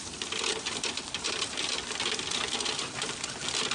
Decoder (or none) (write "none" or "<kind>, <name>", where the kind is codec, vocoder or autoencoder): none